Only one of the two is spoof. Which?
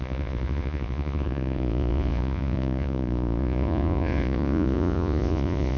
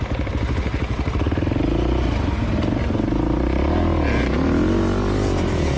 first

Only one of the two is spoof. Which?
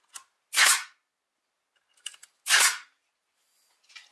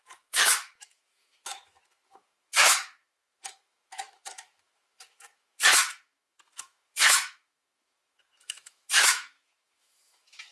second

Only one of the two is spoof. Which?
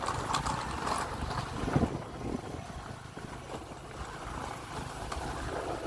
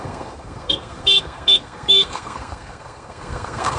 second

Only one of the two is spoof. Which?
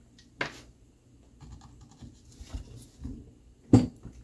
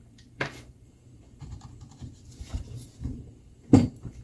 second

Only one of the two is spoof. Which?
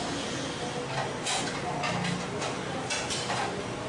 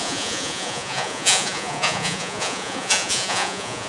second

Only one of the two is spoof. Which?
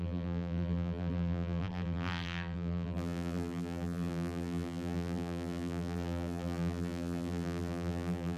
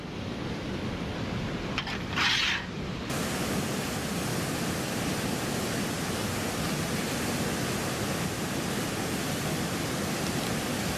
first